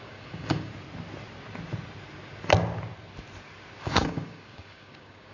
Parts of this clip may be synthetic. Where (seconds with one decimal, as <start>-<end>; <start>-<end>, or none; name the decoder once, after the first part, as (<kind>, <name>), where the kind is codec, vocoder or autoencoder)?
0.0-0.7 (codec, DAC); 3.8-5.3